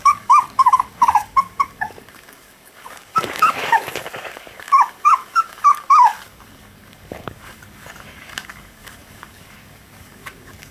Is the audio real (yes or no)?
no